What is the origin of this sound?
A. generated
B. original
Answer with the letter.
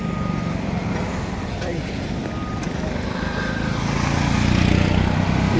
B